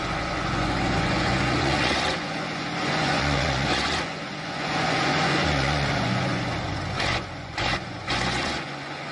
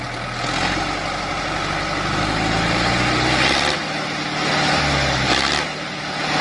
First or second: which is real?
second